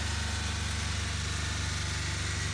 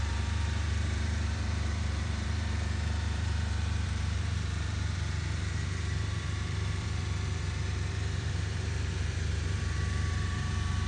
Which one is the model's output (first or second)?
second